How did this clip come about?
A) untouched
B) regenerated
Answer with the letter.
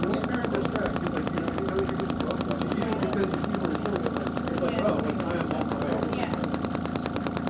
A